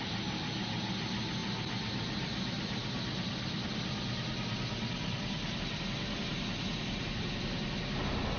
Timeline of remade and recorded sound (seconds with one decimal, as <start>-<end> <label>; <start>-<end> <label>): 0.0-8.4 recorded